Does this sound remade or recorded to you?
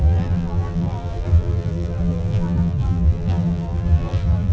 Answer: remade